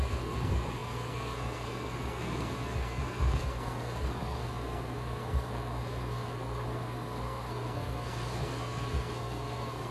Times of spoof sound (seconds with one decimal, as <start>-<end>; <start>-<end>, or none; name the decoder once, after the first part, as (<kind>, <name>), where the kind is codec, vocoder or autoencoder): 0.0-9.9 (codec, SNAC)